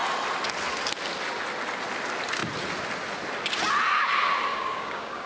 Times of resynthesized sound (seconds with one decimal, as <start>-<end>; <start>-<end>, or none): 4.5-5.3